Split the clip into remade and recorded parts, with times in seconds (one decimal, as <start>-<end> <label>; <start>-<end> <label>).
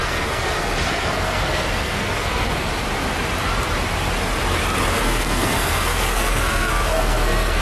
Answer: 0.0-2.7 remade; 2.7-4.9 recorded; 4.9-7.6 remade